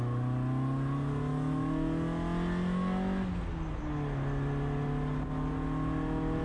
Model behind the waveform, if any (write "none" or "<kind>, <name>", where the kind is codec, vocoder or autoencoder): none